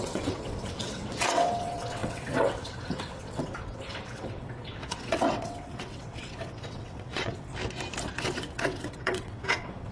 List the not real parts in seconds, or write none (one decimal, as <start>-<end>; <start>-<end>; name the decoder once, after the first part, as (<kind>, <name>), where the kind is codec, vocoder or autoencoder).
0.0-7.5 (vocoder, WaveNeXt); 8.2-9.9